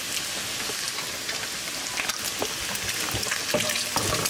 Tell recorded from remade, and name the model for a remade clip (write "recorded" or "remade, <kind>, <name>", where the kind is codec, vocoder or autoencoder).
recorded